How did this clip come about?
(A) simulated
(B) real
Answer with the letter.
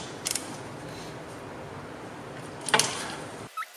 B